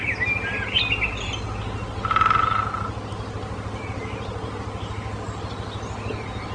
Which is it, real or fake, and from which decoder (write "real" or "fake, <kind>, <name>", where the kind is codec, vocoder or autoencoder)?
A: real